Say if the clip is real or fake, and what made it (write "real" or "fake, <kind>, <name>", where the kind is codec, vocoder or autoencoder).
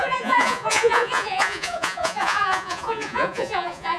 fake, vocoder, Vocos